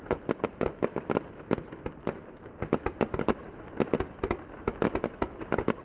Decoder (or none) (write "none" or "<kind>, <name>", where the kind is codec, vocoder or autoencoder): none